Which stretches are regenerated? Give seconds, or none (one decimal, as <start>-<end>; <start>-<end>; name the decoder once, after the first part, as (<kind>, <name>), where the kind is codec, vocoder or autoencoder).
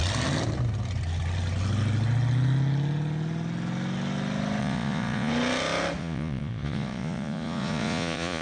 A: 4.6-5.3 (vocoder, Vocos); 6.0-8.4